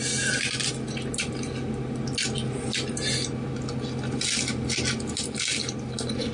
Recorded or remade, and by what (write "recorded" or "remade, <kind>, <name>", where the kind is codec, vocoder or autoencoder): recorded